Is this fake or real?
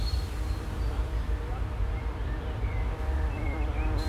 fake